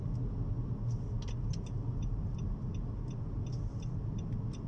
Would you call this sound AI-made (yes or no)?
no